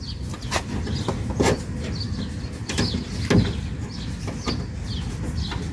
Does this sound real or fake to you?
real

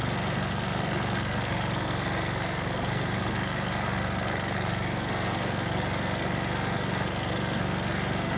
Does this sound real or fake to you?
fake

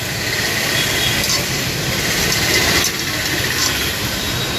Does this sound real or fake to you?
fake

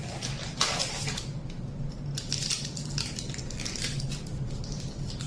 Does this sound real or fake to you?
real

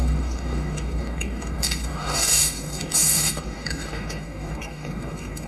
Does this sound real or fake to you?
fake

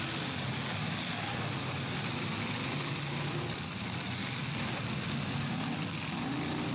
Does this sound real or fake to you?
real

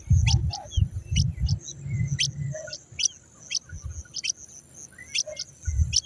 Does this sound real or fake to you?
real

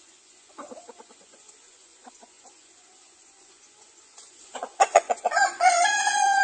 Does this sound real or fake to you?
fake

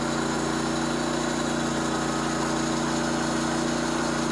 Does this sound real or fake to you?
real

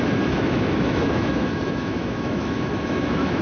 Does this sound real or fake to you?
fake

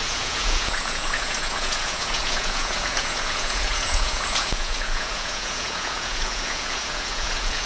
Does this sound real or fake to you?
fake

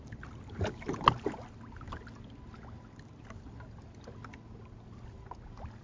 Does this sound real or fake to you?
real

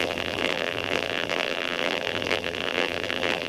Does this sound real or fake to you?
fake